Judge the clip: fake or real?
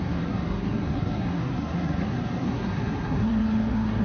fake